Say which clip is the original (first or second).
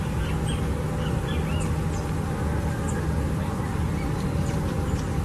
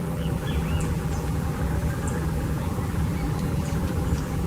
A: first